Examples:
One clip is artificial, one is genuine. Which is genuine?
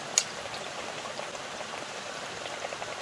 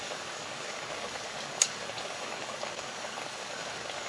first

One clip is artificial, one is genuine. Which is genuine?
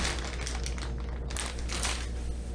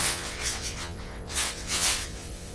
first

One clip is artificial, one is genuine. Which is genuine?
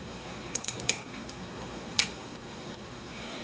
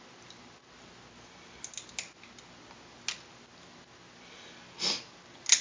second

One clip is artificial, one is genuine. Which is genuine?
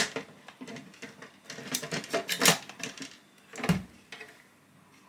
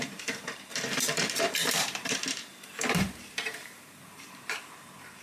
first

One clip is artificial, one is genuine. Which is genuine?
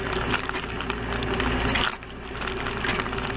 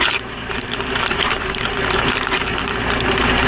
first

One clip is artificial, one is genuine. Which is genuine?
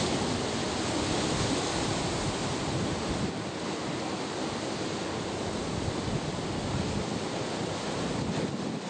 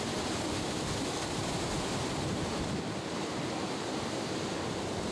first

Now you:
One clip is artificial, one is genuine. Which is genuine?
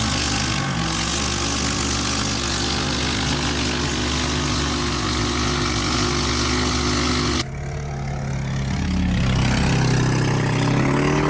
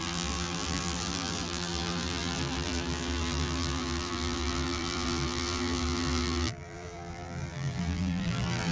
first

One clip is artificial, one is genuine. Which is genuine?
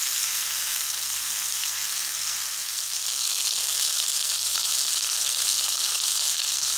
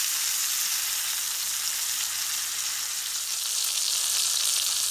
second